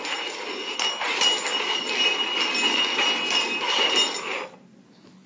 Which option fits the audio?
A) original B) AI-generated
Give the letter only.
A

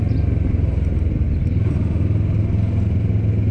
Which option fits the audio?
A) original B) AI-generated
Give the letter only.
A